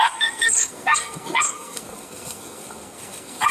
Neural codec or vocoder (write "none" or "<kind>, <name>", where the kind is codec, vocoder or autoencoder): codec, SNAC